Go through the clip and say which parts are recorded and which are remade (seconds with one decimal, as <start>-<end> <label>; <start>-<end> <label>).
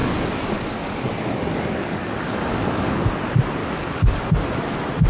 0.0-3.1 remade; 3.1-3.6 recorded; 3.6-4.2 remade; 4.2-5.1 recorded